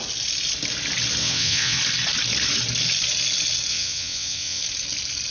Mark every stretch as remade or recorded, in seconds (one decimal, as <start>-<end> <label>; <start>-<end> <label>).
0.0-1.2 recorded; 1.2-1.8 remade; 1.8-3.7 recorded; 3.7-4.6 remade; 4.6-5.3 recorded

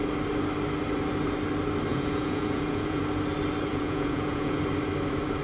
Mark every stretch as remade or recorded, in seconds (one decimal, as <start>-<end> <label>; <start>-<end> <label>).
0.0-1.9 recorded; 1.9-3.0 remade; 3.0-3.7 recorded; 3.7-4.6 remade; 4.6-5.4 recorded